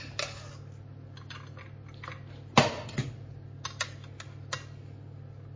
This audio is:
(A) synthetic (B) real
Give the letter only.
B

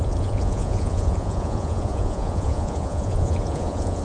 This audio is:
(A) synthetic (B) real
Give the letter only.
A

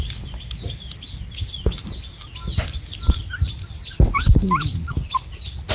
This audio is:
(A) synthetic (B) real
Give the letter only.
B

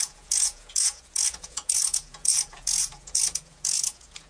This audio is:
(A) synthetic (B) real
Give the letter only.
A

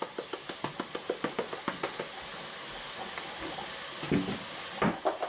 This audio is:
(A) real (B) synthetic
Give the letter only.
A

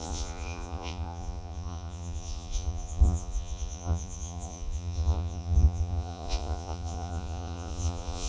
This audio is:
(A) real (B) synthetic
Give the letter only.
B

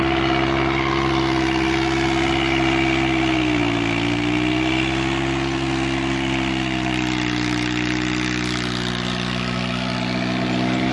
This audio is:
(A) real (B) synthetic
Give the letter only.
A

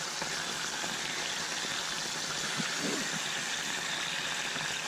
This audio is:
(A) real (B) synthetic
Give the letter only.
A